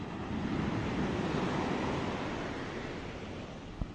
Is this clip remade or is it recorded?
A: recorded